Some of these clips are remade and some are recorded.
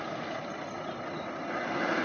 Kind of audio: recorded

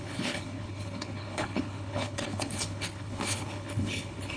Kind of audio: remade